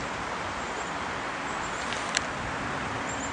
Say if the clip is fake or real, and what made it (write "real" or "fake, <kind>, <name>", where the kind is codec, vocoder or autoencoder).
real